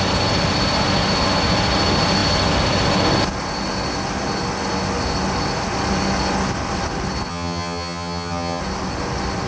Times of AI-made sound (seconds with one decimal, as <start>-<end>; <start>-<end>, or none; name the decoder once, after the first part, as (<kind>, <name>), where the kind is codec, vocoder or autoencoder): 7.3-8.6 (vocoder, HiFi-GAN)